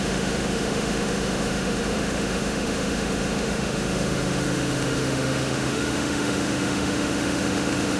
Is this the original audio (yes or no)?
no